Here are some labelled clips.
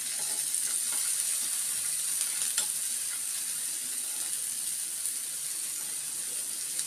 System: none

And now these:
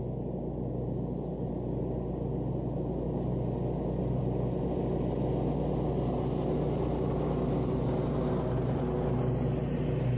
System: none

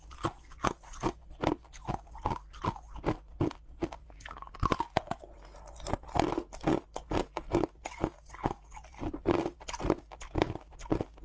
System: none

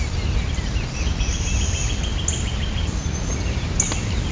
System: none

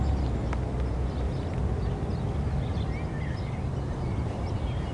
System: none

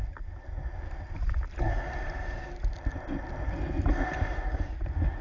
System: none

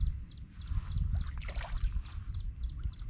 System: none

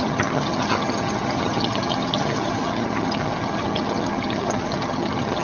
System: vocoder, HiFi-GAN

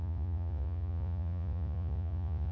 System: vocoder, Vocos